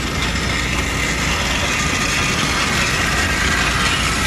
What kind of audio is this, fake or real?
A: real